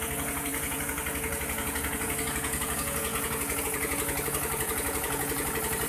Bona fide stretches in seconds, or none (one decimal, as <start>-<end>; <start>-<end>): none